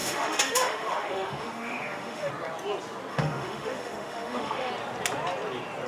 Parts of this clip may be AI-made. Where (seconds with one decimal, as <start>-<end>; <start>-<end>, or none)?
0.0-2.3; 3.1-4.7